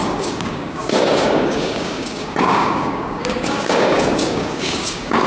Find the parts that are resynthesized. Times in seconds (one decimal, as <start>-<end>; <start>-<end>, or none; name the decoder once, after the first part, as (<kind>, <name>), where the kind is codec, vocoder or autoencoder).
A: 0.0-5.3 (codec, DAC)